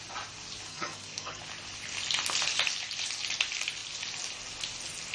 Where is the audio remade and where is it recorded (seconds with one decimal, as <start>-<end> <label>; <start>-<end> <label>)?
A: 0.0-0.7 recorded; 0.7-1.4 remade; 1.4-5.1 recorded